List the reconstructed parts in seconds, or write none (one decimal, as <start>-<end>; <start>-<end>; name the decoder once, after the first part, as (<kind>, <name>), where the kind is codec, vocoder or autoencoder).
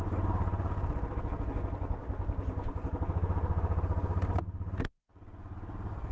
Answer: none